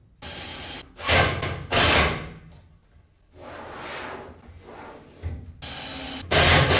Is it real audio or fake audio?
real